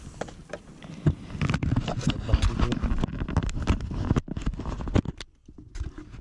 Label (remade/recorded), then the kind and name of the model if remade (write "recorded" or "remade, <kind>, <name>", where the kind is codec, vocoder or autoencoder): recorded